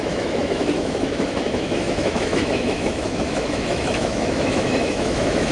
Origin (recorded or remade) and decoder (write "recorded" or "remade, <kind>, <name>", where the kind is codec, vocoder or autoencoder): remade, autoencoder, DAC-VAE